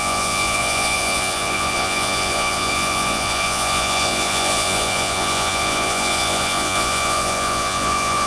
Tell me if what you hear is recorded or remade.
remade